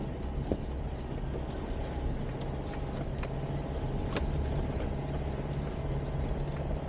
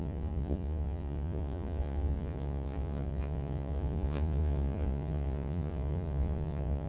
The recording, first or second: first